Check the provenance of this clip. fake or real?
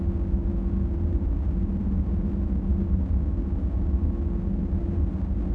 real